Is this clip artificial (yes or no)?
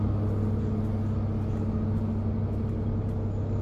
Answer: no